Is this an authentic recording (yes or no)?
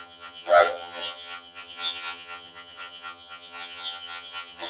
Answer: no